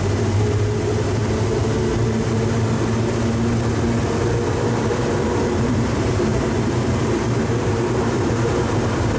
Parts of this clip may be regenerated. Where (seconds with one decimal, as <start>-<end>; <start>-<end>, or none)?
0.0-1.2; 5.5-9.2